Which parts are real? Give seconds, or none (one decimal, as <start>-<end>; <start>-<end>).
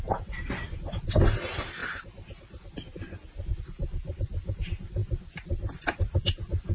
1.8-3.6